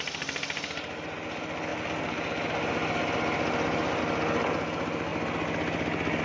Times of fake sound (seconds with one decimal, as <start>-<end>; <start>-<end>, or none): none